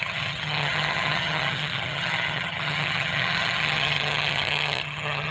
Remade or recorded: remade